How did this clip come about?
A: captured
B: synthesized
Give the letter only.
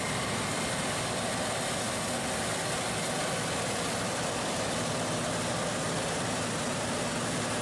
A